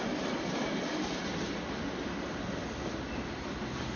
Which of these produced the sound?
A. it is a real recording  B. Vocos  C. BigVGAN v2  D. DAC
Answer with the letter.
A